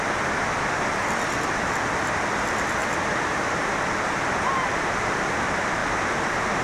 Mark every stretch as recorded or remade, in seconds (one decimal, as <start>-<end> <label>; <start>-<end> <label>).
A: 0.0-2.8 recorded; 2.8-3.8 remade; 3.8-5.8 recorded; 5.8-6.6 remade